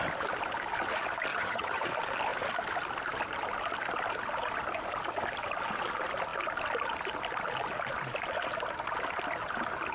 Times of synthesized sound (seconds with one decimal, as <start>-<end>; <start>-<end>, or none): 1.3-1.9